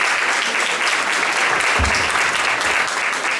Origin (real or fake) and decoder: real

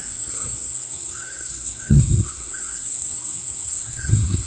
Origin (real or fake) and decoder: fake, codec, SNAC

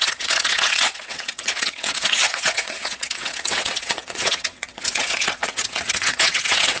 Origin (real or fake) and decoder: fake, vocoder, WaveNeXt